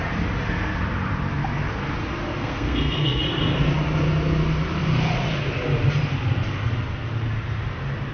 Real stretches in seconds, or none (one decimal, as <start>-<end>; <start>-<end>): 0.0-2.4; 3.2-8.1